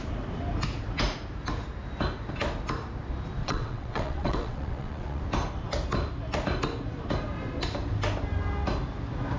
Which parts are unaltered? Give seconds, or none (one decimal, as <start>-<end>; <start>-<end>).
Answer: 0.0-3.4; 5.2-9.4